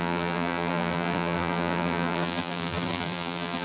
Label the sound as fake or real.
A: fake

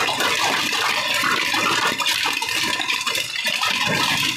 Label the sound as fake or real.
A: fake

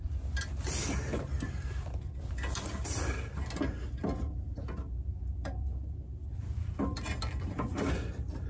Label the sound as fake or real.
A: real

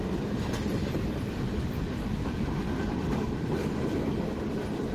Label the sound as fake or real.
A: real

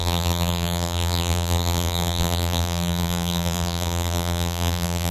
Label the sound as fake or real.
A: fake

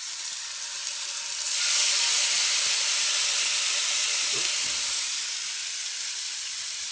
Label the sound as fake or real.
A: fake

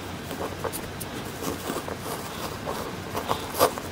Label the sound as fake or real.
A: real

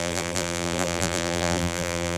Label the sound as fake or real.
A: fake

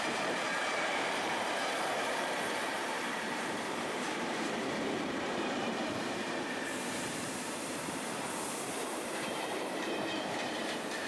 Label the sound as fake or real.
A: fake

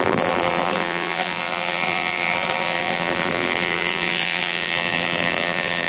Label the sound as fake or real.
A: fake